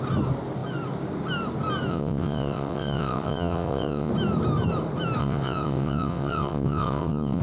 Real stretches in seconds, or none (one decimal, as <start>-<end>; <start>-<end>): 0.0-1.9; 4.1-5.2